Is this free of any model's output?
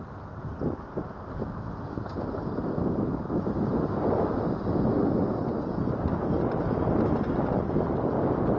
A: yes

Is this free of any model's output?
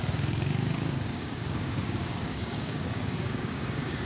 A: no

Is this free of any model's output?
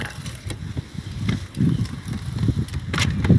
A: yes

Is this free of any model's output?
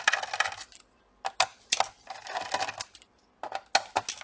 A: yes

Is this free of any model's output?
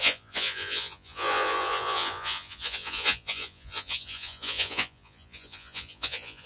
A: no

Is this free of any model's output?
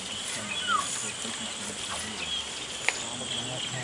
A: yes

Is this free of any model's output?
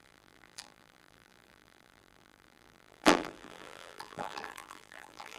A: no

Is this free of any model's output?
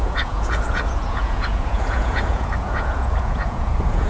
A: no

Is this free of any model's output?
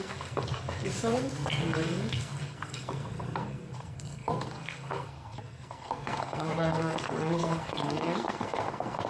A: no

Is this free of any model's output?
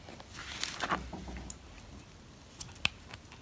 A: yes